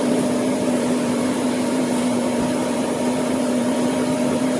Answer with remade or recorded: remade